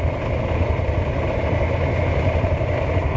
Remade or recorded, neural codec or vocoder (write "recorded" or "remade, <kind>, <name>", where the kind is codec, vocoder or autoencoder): recorded